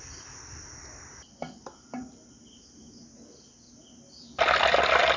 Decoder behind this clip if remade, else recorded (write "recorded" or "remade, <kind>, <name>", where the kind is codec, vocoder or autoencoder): recorded